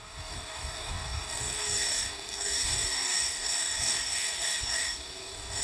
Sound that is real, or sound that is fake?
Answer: fake